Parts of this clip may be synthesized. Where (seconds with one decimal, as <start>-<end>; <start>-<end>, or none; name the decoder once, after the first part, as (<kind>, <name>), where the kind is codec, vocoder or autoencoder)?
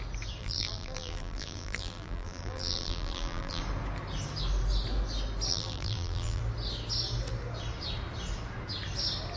0.4-3.6 (vocoder, BigVGAN v2); 5.5-6.4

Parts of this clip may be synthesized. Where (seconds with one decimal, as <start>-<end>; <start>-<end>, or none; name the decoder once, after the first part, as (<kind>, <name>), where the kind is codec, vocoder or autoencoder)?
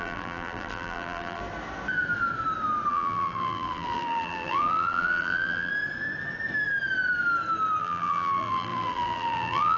0.0-1.4 (vocoder, BigVGAN v2); 2.9-5.7; 7.8-9.8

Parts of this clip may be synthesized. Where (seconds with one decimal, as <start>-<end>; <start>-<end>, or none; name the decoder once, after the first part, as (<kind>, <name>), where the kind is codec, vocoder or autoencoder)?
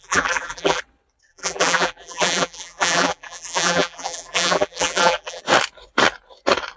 0.0-0.8 (vocoder, BigVGAN v2); 1.3-5.4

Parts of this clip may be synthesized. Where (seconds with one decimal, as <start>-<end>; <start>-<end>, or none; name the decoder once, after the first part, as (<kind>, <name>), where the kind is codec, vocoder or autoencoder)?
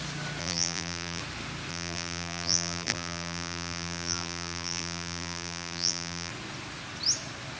0.4-1.2 (vocoder, BigVGAN v2); 1.7-6.3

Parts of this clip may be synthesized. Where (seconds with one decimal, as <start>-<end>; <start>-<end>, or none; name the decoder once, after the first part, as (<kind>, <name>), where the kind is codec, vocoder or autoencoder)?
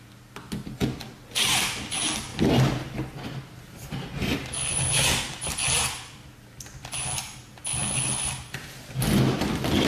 4.2-4.9 (vocoder, BigVGAN v2)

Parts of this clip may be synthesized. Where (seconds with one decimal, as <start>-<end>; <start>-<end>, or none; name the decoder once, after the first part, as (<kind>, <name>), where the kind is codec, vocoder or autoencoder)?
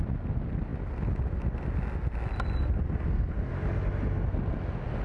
none